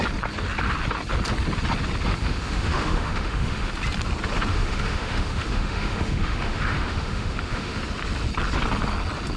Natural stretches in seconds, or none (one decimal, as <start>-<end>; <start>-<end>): 0.0-2.2; 3.7-4.5; 7.8-9.4